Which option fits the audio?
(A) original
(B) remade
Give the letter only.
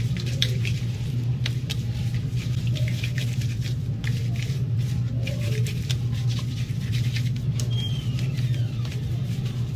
B